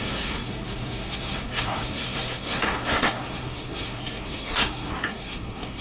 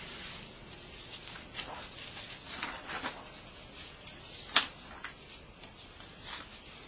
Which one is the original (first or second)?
second